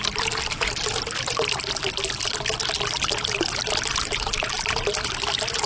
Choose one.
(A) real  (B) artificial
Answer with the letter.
A